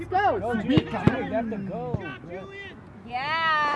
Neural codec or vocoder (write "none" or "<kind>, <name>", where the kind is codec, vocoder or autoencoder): none